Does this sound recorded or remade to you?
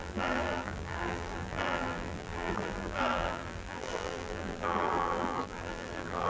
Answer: remade